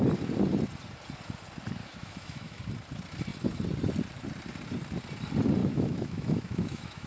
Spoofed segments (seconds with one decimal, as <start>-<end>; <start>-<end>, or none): 1.8-2.6; 5.6-7.1